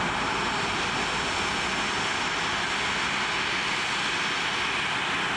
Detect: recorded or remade recorded